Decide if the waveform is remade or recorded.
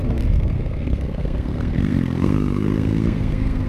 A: remade